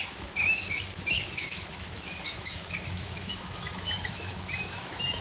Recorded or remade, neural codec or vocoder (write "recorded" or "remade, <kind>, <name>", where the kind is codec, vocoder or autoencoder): remade, autoencoder, DAC-VAE